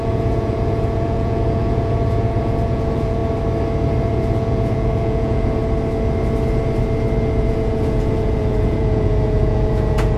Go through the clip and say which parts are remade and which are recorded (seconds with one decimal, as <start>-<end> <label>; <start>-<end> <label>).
0.0-3.2 remade; 3.2-4.1 recorded; 4.1-5.6 remade; 5.6-7.3 recorded; 7.3-10.2 remade